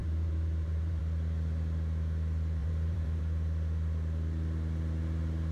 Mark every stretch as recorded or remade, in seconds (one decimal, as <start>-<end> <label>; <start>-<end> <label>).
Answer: 0.0-1.0 remade; 1.0-2.6 recorded; 2.6-3.2 remade; 3.2-5.5 recorded